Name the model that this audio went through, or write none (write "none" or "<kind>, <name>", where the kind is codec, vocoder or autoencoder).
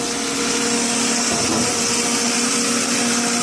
none